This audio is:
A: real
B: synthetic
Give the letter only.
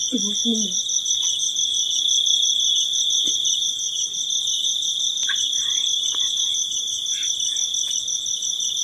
A